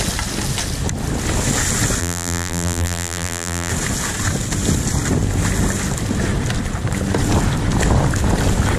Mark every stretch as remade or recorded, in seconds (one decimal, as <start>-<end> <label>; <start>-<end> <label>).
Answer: 0.0-2.0 recorded; 2.0-3.7 remade; 3.7-8.8 recorded